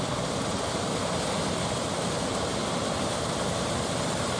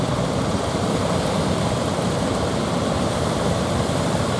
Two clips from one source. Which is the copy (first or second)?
second